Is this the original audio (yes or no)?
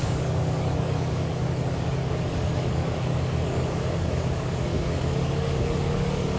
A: no